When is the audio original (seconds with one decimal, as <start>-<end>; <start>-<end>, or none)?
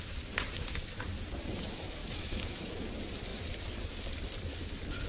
0.0-2.0; 2.9-5.1